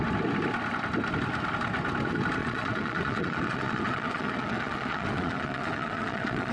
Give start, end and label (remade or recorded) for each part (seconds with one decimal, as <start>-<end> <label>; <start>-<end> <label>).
0.0-2.4 recorded; 2.4-6.5 remade